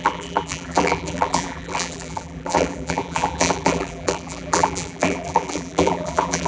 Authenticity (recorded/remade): remade